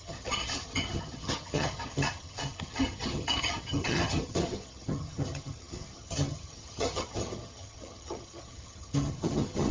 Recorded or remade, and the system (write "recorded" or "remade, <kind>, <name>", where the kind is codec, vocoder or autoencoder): remade, vocoder, HiFi-GAN